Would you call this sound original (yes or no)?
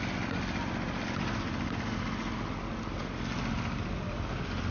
yes